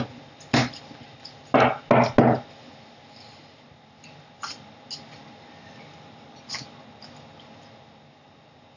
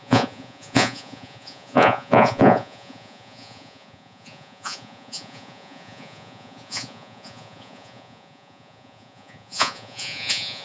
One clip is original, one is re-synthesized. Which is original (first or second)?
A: first